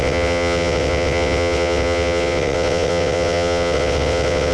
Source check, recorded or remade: remade